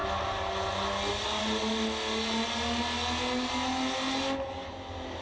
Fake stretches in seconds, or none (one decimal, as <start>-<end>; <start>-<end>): none